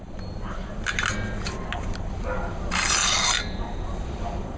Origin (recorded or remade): recorded